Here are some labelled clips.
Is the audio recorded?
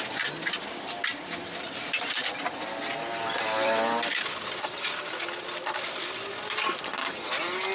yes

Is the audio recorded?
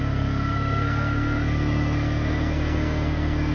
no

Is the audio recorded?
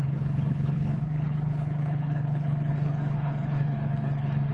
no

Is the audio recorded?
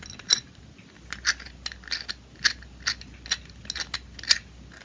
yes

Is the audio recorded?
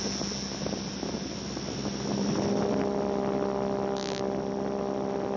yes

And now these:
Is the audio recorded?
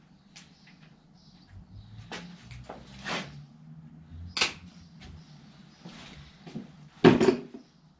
yes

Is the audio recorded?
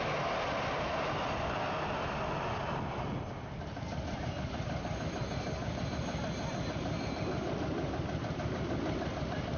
yes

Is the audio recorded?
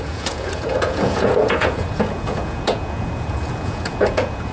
no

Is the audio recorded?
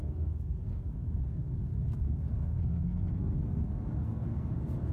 no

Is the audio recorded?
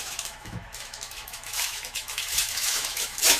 no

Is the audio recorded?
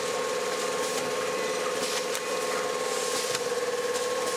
no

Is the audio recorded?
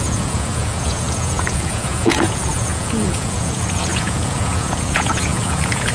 no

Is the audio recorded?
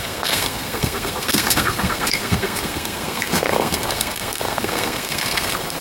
no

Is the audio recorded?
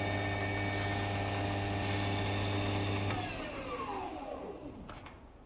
yes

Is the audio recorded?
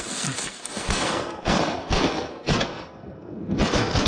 no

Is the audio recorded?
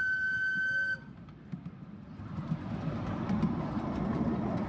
yes